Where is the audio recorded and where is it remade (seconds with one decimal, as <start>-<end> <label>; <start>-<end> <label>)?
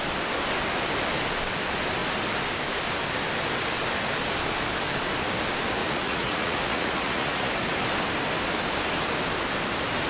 0.0-5.8 recorded; 5.8-7.5 remade; 7.5-10.1 recorded